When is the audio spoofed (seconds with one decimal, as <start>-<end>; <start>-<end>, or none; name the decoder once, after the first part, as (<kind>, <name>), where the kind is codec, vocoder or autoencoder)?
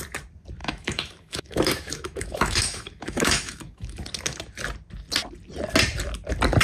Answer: 0.6-4.0 (autoencoder, DAC-VAE)